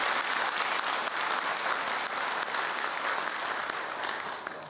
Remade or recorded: recorded